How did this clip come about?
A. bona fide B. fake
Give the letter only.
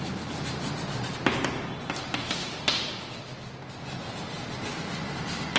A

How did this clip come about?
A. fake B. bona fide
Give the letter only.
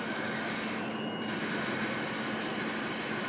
B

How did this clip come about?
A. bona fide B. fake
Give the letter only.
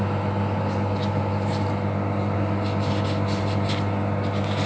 A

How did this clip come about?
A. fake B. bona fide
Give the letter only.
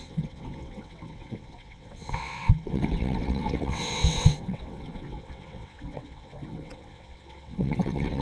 A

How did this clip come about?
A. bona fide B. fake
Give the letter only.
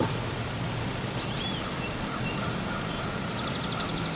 A